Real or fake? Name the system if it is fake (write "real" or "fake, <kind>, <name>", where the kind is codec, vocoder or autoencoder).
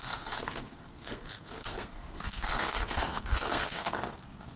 fake, codec, SNAC